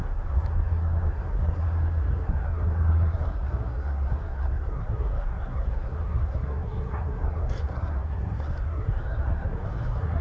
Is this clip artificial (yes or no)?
yes